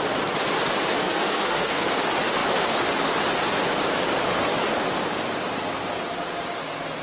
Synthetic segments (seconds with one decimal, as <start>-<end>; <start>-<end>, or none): 1.0-1.9